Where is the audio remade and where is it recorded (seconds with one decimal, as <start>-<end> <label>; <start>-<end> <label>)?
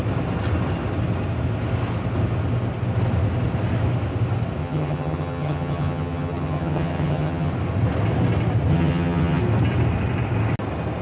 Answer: 0.0-4.6 recorded; 4.6-7.5 remade; 7.5-8.7 recorded; 8.7-9.4 remade; 9.4-11.0 recorded